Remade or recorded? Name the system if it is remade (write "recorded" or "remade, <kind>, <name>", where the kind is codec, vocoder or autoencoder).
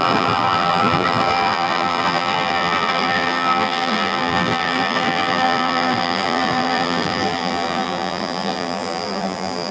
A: remade, vocoder, BigVGAN v2